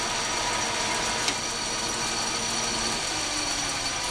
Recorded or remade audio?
recorded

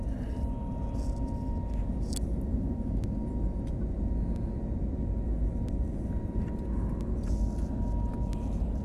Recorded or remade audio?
recorded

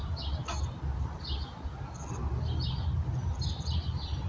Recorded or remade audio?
recorded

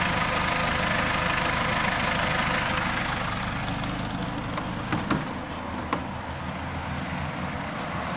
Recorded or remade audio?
recorded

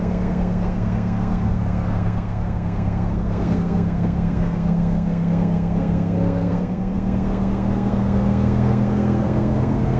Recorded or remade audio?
remade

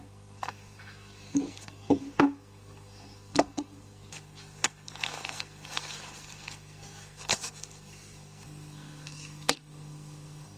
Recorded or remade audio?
remade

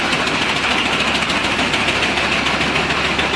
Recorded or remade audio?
recorded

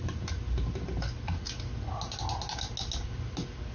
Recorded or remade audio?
recorded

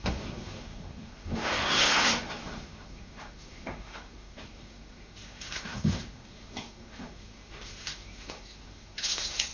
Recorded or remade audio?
remade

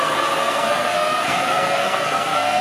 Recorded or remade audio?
remade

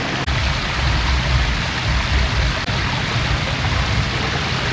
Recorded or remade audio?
recorded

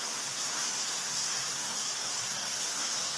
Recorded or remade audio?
remade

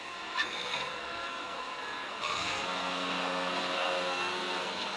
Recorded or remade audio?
remade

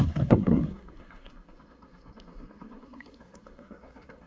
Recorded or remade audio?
remade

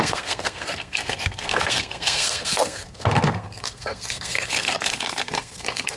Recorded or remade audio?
remade